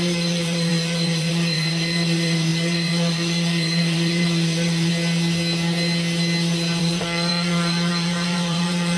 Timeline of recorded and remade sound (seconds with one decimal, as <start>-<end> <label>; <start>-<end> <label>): 0.0-4.9 remade; 4.9-6.8 recorded; 6.8-9.0 remade